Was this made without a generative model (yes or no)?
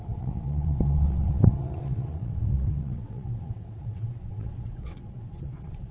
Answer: no